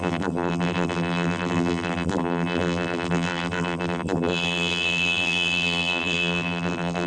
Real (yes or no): no